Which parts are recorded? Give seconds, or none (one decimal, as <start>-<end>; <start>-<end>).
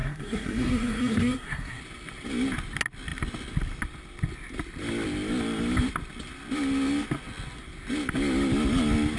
1.8-9.2